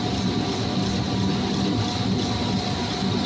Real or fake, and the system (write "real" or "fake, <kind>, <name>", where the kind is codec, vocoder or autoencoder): real